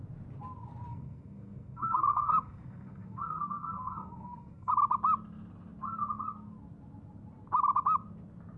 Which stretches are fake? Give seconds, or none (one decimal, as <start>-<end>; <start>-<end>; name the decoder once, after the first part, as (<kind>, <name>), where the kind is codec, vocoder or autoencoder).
0.9-4.7 (codec, SNAC)